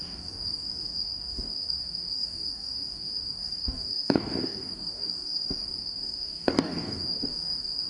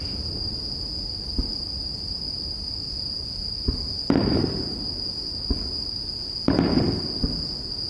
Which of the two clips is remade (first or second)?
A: first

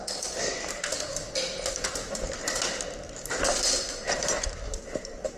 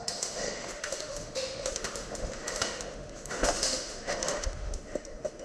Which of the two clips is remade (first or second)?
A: second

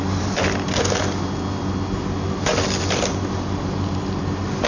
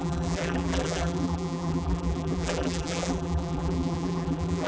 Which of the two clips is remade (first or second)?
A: second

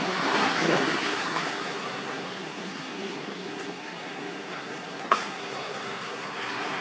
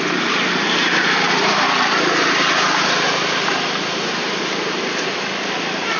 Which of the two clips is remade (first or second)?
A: first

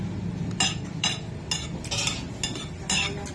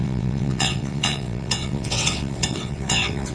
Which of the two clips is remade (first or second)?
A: second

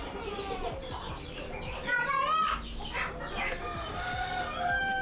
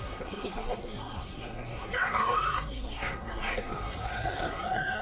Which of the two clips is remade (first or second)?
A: second